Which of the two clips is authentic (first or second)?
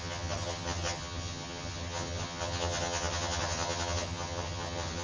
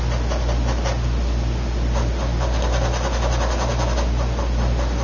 second